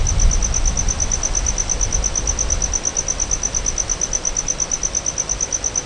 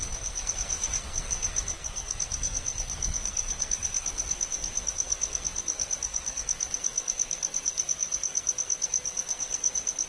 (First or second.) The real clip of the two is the first